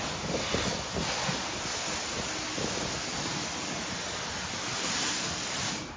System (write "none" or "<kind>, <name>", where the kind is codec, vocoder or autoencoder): none